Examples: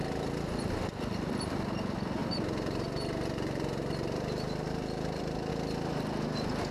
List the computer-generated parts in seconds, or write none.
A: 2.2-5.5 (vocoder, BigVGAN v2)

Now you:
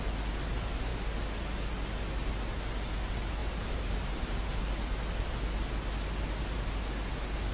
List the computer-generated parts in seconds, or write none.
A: 3.4-4.6 (vocoder, BigVGAN v2)